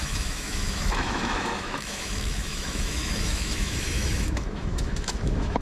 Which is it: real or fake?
fake